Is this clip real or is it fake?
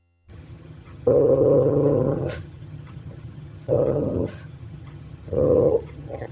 fake